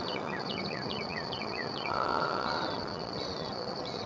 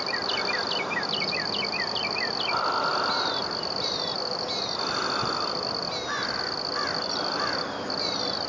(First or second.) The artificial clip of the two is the first